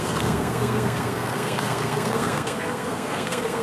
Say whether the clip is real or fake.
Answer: fake